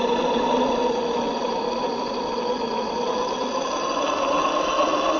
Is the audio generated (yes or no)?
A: no